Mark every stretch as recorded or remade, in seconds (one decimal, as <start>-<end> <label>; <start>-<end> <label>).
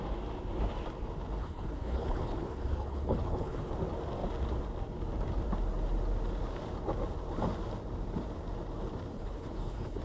0.0-1.4 recorded; 1.4-3.7 remade; 3.7-9.1 recorded; 9.1-10.0 remade